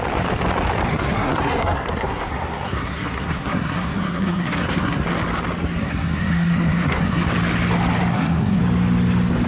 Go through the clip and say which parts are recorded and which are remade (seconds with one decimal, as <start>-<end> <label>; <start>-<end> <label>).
0.0-0.9 recorded; 0.9-5.1 remade; 5.1-5.8 recorded; 5.8-7.3 remade; 7.3-8.1 recorded; 8.1-8.6 remade; 8.6-9.5 recorded